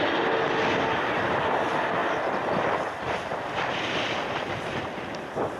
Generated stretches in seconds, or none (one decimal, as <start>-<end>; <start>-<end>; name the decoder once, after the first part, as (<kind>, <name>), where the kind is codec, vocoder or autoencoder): none